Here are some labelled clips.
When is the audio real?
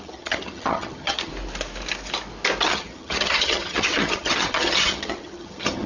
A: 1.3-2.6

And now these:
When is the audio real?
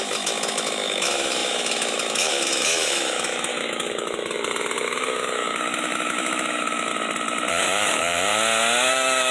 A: 6.9-7.5; 8.3-8.9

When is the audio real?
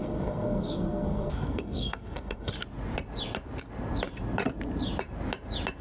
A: 2.5-5.8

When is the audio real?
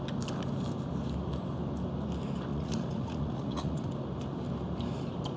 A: 0.0-2.5; 3.9-5.4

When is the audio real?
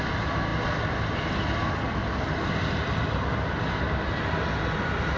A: 0.0-5.2